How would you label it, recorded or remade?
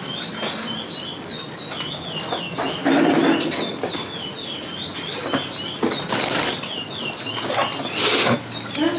recorded